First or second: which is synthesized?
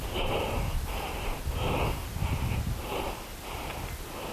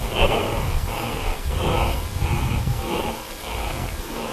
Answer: second